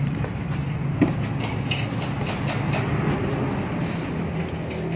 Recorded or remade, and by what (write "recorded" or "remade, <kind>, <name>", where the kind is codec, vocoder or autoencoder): recorded